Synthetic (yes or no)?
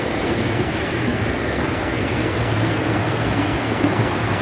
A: yes